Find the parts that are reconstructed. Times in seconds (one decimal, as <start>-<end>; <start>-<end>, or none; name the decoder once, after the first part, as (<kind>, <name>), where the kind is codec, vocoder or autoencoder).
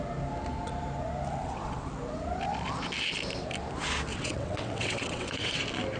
1.4-1.9 (vocoder, WaveNeXt); 4.1-5.6